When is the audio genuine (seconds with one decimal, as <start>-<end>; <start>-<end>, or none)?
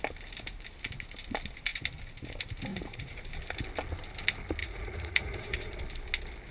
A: 0.0-2.7; 3.3-4.6; 5.8-6.5